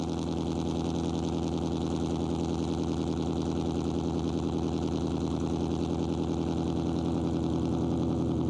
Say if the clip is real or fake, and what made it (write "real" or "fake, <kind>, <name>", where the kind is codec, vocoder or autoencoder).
real